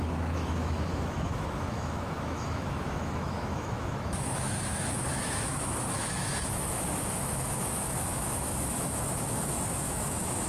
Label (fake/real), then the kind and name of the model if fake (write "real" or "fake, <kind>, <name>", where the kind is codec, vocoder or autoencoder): fake, autoencoder, DAC-VAE